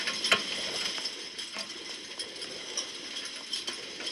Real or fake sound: real